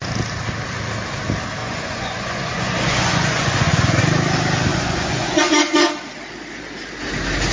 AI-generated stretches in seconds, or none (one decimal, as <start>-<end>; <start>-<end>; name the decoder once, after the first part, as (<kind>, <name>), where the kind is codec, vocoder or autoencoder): 1.6-4.0 (vocoder, Vocos); 4.7-5.9